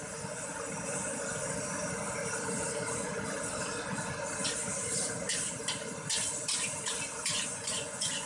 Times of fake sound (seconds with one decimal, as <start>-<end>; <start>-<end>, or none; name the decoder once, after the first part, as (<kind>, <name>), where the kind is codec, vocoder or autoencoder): 7.5-8.3 (vocoder, Vocos)